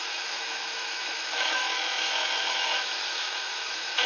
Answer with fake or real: fake